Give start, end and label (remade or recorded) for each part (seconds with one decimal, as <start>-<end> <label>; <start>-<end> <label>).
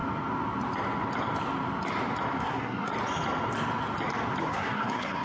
0.0-2.4 recorded; 2.4-2.9 remade; 2.9-4.4 recorded; 4.4-5.2 remade